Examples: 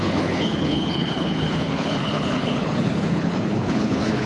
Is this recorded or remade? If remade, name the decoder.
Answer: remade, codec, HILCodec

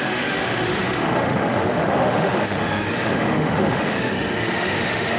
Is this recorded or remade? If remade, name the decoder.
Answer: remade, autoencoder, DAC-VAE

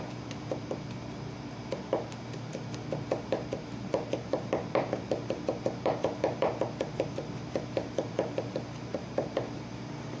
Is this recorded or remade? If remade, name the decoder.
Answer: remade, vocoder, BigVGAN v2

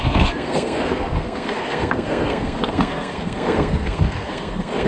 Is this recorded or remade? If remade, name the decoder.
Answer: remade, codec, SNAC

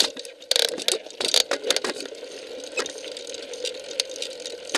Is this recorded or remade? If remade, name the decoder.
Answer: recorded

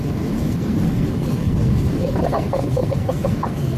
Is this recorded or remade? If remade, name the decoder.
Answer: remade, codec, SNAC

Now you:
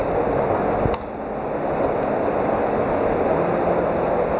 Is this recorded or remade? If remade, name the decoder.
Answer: recorded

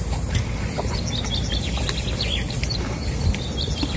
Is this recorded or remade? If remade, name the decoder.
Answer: recorded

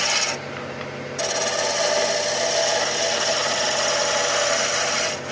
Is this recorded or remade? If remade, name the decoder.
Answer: recorded